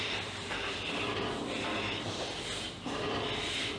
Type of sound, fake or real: real